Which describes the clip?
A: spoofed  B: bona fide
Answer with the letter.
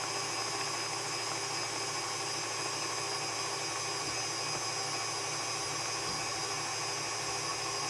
B